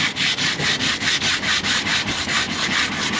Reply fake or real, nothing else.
real